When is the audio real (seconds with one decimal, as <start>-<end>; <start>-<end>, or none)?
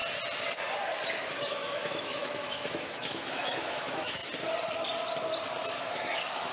0.0-1.4; 4.2-5.8